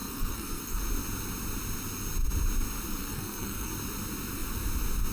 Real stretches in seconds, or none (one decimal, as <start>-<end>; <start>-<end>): 0.8-3.0; 3.7-5.1